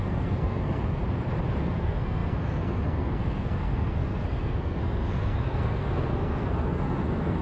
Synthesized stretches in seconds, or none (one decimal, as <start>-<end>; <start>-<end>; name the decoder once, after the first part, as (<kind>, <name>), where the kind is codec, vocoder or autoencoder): 0.0-1.0 (codec, SNAC); 1.6-7.4